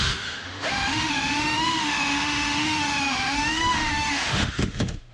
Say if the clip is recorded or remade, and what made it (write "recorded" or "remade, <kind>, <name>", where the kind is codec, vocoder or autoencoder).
remade, autoencoder, DAC-VAE